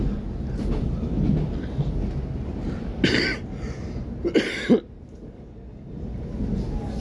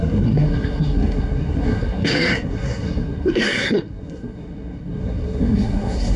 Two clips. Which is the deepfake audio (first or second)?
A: second